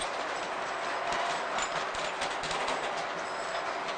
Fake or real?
real